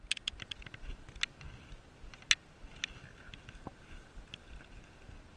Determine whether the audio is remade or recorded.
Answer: recorded